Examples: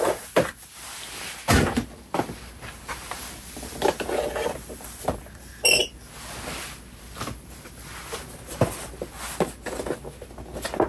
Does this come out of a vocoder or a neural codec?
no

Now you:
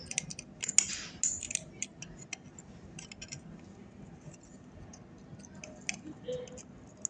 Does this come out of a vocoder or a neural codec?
no